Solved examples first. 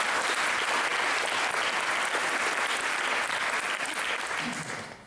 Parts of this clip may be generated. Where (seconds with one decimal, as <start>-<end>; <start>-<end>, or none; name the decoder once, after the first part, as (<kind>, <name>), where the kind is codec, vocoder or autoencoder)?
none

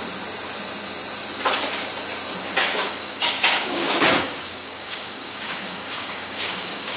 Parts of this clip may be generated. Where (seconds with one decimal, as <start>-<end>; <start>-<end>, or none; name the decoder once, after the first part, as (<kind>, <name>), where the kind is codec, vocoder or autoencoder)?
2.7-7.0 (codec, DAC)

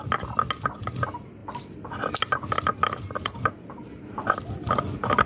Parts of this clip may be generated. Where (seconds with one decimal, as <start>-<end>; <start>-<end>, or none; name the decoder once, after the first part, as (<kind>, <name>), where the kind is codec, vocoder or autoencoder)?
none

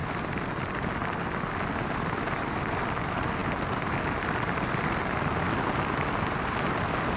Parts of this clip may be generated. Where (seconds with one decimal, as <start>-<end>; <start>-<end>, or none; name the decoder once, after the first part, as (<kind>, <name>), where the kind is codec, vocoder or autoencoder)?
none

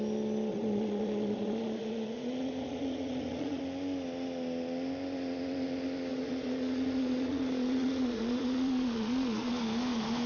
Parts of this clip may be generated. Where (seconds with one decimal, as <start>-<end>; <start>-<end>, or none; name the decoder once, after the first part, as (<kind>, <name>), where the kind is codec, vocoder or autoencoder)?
0.5-3.6 (vocoder, Vocos); 6.1-9.5

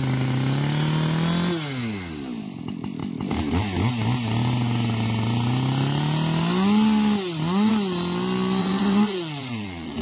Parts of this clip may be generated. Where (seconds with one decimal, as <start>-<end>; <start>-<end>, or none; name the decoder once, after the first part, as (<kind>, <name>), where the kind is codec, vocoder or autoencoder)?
8.6-10.0 (vocoder, Vocos)

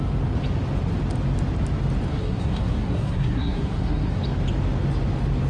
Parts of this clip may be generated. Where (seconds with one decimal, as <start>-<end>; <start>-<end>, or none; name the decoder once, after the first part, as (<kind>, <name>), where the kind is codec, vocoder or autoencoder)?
2.1-4.2 (codec, SNAC)

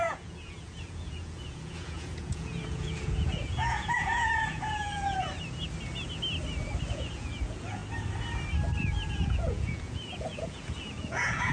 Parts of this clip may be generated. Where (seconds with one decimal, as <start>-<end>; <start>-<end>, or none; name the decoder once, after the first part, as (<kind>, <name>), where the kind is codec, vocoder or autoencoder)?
0.0-5.3 (vocoder, Vocos); 6.9-7.8; 9.1-11.5